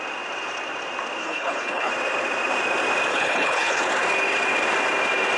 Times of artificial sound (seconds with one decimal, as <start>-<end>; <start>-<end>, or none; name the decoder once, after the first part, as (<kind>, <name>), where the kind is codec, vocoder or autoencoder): 1.2-1.9 (codec, HILCodec); 3.1-3.8